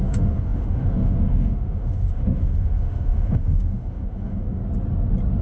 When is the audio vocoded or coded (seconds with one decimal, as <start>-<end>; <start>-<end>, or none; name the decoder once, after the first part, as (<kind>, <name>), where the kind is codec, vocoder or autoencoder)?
0.0-4.6 (autoencoder, DAC-VAE)